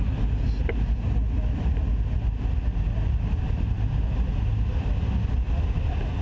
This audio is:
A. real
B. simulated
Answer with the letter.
A